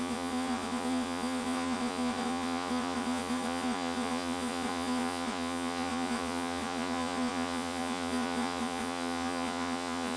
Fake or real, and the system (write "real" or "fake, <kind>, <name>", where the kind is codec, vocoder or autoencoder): fake, vocoder, Vocos